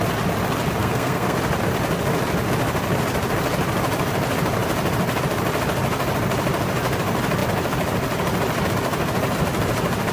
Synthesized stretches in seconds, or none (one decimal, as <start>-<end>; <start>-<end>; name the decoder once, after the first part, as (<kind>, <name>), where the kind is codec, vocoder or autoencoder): 0.8-1.4 (codec, SNAC)